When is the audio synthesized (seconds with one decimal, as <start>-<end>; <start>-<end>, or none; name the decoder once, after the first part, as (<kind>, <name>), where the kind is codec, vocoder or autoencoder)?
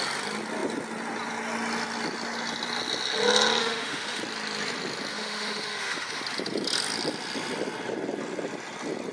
3.6-4.2 (autoencoder, DAC-VAE); 5.1-6.2